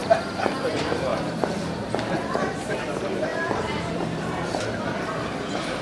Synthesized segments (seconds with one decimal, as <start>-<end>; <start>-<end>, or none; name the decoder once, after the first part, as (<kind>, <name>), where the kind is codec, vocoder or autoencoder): 1.1-2.8 (vocoder, BigVGAN v2); 3.3-4.6